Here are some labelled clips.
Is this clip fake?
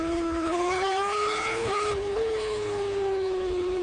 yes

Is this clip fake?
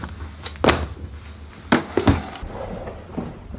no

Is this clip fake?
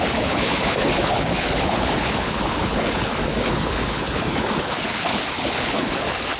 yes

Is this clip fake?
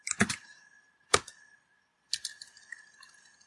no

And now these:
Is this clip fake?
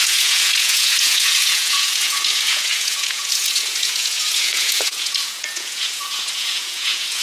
yes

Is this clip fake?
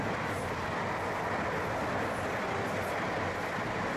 no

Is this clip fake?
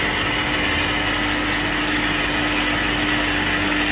no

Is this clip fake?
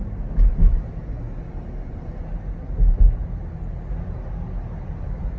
no